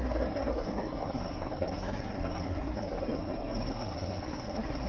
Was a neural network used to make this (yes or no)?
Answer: yes